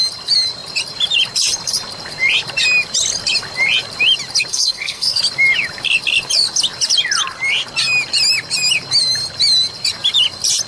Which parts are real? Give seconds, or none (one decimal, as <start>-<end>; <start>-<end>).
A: 0.0-4.5; 5.2-10.7